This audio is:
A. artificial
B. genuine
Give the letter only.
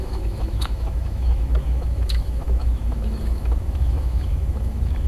A